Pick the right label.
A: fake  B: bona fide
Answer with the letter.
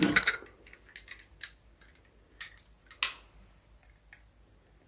B